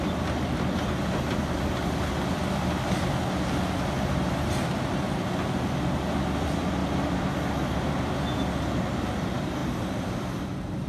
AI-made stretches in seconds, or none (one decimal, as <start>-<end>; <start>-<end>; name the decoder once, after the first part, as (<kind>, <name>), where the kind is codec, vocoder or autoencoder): 6.8-7.3 (vocoder, BigVGAN v2); 9.6-10.9